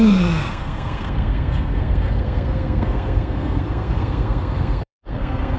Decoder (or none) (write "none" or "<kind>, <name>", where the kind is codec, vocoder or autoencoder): codec, SNAC